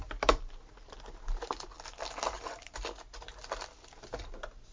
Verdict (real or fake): real